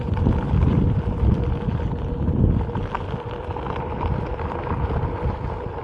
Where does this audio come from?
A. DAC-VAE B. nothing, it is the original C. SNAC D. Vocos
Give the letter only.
B